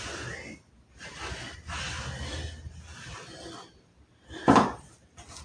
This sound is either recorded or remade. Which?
recorded